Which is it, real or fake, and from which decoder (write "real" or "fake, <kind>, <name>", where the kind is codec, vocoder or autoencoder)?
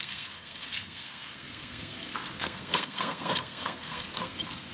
fake, codec, SNAC